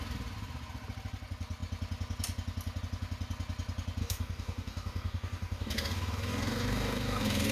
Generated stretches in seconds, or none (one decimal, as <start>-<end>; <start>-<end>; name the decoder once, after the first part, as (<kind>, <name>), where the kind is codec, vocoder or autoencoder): 4.0-7.5 (codec, DAC)